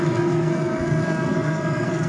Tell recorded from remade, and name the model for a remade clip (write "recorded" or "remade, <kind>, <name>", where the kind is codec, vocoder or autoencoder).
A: remade, codec, SNAC